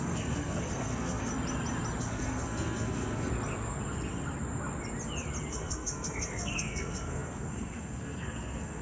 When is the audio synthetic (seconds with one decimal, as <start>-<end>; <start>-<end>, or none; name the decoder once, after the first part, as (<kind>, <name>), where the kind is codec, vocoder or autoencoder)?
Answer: 0.0-1.3 (codec, SNAC); 2.0-3.3; 5.5-8.8